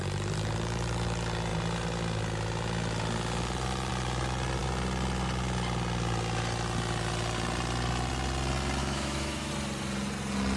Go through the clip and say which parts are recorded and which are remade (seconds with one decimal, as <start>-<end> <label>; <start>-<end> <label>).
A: 0.0-8.8 recorded; 8.8-9.5 remade; 9.5-10.6 recorded